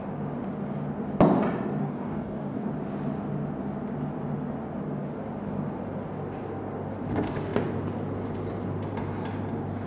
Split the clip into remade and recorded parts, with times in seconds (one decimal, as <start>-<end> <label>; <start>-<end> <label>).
0.0-1.8 recorded; 1.8-2.7 remade; 2.7-9.9 recorded